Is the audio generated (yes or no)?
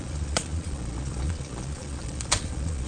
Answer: yes